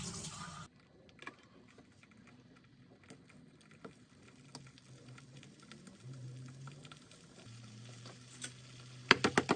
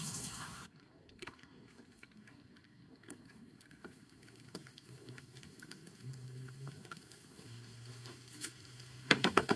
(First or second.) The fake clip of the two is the second